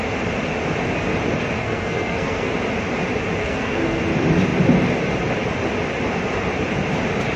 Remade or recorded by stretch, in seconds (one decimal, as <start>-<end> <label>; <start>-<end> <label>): 0.0-1.6 recorded; 1.6-2.5 remade; 2.5-3.4 recorded; 3.4-4.0 remade; 4.0-7.4 recorded